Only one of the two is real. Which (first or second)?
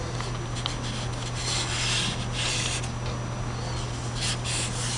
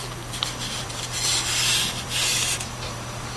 first